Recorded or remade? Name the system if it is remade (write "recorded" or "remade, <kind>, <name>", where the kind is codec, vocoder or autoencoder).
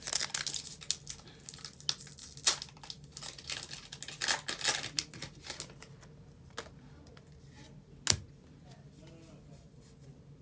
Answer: recorded